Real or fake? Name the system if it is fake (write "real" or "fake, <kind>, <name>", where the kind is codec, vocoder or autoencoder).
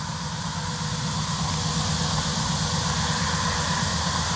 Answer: real